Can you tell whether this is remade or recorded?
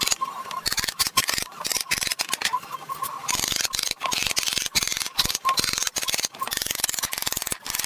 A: remade